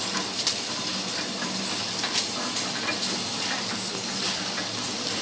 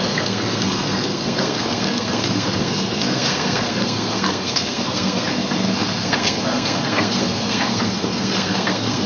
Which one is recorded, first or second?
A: first